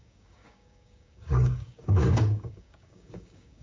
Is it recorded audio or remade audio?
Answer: remade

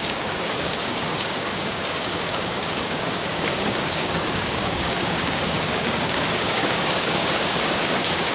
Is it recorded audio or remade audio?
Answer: remade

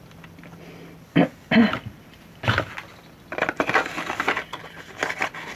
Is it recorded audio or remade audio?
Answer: recorded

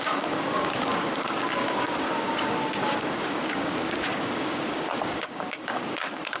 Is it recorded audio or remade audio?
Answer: remade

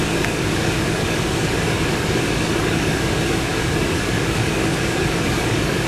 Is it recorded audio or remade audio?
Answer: remade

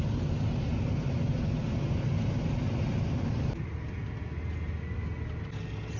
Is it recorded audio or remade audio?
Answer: recorded